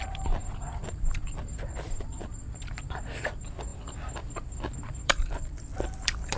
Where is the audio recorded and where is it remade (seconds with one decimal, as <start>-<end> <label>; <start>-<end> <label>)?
0.0-0.8 recorded; 0.8-1.7 remade; 1.7-3.7 recorded; 3.7-6.4 remade